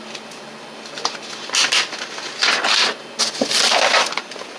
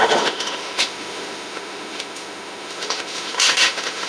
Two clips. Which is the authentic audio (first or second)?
first